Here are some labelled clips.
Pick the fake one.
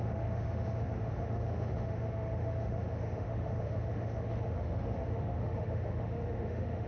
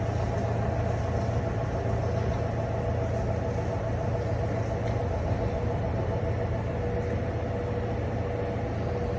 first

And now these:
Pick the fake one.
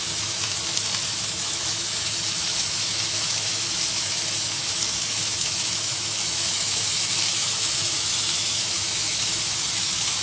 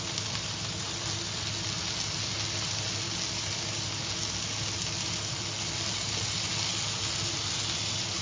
first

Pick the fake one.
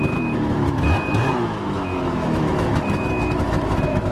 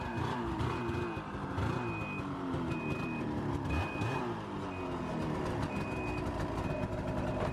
first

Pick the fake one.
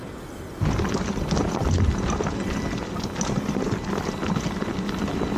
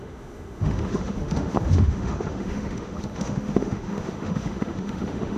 second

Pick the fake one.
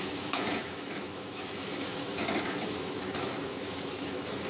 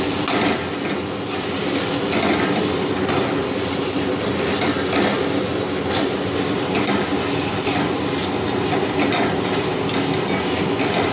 first